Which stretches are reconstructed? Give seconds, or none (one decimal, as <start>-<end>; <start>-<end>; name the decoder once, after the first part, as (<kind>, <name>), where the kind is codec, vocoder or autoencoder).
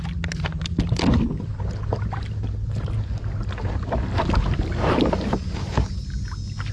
none